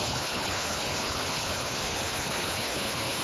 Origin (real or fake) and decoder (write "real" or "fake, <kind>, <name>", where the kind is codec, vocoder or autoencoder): fake, codec, HILCodec